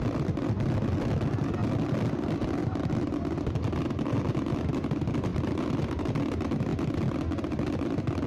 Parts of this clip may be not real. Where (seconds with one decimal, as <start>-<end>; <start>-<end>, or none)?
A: none